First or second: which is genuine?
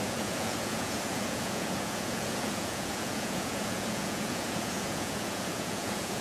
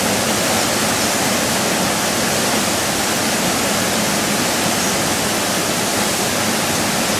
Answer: second